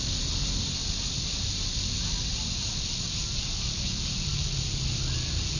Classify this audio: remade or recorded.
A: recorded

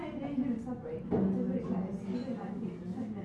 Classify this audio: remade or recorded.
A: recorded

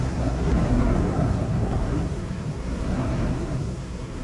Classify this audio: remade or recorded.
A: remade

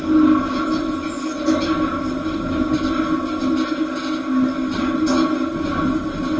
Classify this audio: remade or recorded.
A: recorded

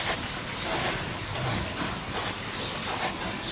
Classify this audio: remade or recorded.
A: recorded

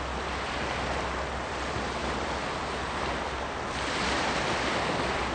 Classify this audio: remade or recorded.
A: recorded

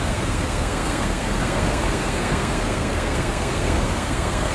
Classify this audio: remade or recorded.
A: remade